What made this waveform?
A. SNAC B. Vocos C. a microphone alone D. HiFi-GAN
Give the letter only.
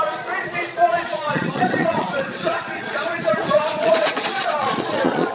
B